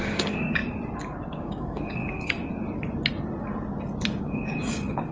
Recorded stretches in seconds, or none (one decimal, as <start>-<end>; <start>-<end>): 0.6-1.3; 2.4-4.2